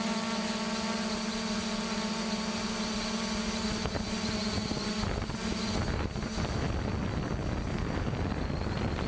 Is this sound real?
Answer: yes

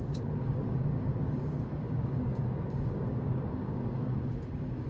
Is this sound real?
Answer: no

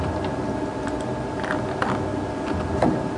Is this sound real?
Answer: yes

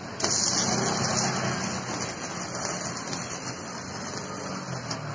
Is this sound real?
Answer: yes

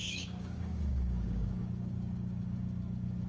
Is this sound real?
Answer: no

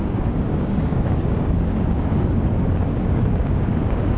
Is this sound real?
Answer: no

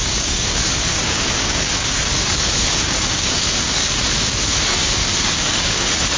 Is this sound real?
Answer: no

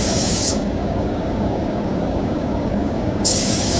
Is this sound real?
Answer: no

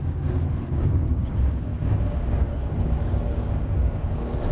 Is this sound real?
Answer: no